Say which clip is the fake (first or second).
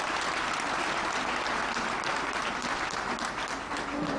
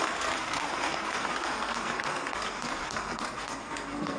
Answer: second